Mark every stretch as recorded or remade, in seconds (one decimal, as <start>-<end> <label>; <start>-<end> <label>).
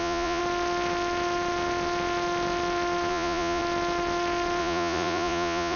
0.0-0.4 remade; 0.4-3.1 recorded; 3.1-3.6 remade; 3.6-4.6 recorded; 4.6-5.8 remade